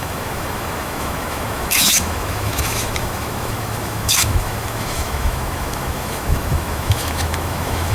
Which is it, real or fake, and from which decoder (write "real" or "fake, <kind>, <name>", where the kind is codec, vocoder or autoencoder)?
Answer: fake, autoencoder, DAC-VAE